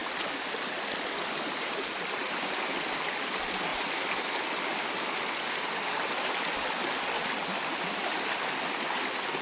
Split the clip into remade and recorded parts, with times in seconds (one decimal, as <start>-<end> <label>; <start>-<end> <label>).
0.0-9.4 recorded